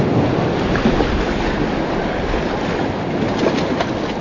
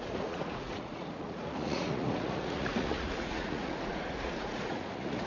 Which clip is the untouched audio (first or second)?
first